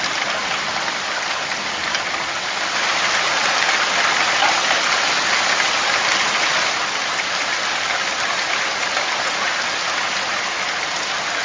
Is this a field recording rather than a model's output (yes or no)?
yes